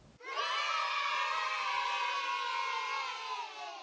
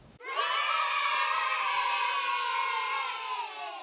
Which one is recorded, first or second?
first